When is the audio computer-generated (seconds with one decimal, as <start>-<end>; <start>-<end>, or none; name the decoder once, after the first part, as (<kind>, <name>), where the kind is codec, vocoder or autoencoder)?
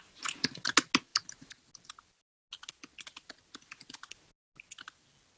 none